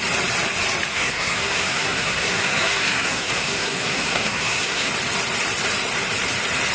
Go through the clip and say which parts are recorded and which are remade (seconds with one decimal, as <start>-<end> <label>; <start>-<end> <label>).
0.0-0.9 recorded; 0.9-4.9 remade; 4.9-6.7 recorded